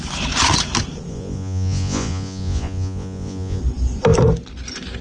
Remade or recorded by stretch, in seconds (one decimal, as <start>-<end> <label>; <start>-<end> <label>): 0.0-1.1 recorded; 1.1-3.6 remade; 3.6-5.0 recorded